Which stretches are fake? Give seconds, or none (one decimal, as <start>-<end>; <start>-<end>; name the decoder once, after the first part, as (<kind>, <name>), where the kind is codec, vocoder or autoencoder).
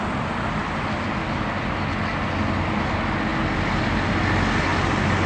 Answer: none